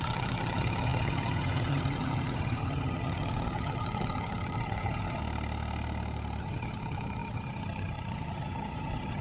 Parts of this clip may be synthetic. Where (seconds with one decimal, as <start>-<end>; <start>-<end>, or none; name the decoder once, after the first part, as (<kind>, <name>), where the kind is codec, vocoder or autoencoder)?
0.0-5.2 (vocoder, HiFi-GAN); 6.4-9.2